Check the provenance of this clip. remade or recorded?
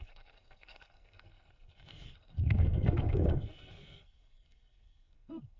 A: remade